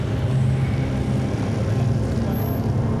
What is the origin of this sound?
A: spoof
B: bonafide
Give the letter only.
B